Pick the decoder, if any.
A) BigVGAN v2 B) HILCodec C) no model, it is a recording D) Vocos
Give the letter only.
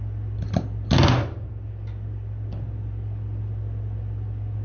C